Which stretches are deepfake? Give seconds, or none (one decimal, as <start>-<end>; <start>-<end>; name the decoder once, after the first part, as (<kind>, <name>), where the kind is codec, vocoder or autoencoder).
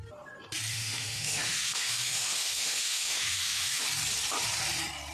0.7-3.8 (autoencoder, DAC-VAE)